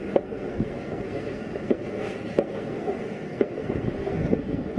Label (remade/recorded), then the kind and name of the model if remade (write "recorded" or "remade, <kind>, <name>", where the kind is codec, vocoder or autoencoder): remade, codec, SNAC